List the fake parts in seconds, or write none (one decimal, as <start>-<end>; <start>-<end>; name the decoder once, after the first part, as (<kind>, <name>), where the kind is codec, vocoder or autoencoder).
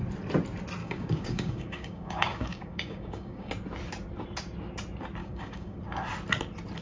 0.8-3.5 (codec, DAC); 5.2-5.8